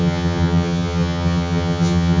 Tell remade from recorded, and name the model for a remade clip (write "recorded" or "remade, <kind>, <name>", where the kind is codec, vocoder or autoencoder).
remade, vocoder, HiFi-GAN